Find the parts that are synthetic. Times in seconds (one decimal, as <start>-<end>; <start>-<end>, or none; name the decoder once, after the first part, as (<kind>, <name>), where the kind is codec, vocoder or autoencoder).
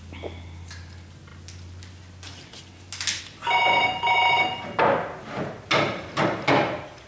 none